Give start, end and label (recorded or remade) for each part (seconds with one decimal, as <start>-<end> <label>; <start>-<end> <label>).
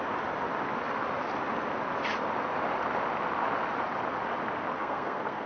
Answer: 0.0-4.8 recorded; 4.8-5.5 remade